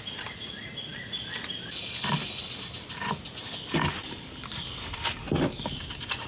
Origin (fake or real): real